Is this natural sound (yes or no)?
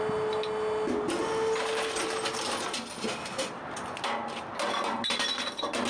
yes